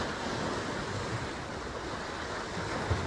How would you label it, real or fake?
real